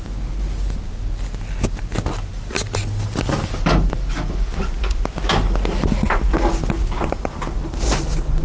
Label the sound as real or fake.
real